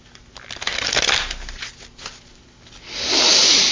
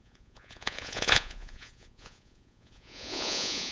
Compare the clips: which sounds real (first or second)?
first